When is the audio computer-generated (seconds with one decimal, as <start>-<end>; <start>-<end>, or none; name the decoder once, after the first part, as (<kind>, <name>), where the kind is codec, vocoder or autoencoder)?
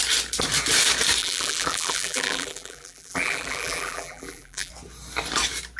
1.2-4.7 (vocoder, BigVGAN v2)